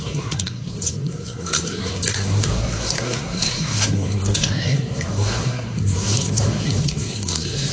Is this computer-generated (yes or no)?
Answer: yes